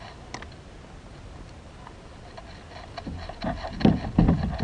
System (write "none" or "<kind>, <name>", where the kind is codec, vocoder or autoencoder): none